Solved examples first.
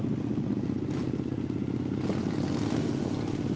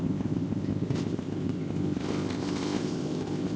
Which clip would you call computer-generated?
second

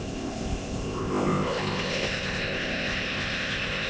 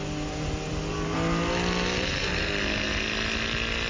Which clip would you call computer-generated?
first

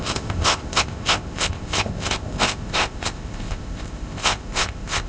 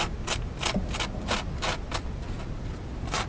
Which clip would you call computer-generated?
first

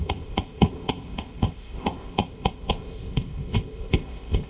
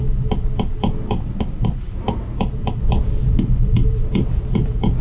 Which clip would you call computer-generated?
first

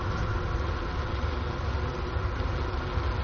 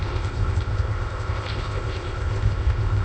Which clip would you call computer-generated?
second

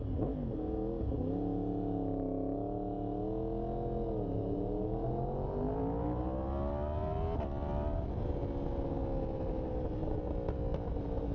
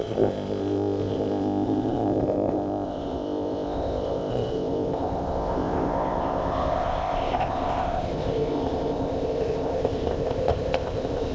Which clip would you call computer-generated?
second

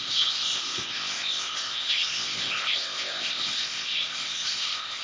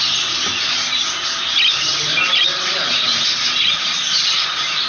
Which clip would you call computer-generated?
first